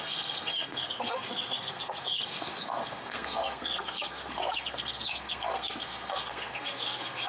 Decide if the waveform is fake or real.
fake